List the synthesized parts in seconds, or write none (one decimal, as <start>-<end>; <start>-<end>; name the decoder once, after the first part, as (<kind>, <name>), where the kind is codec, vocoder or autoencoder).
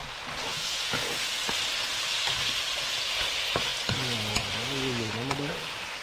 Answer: 0.5-1.4 (vocoder, Vocos); 2.6-3.3